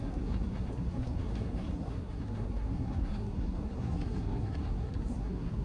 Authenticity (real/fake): fake